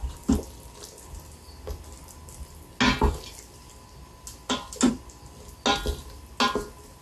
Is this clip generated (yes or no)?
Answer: no